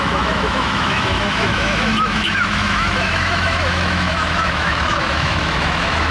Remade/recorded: remade